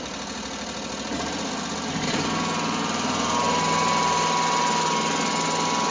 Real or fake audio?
real